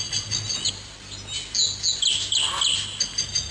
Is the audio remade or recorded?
recorded